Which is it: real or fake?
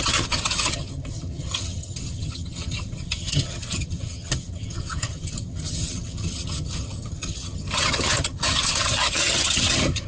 fake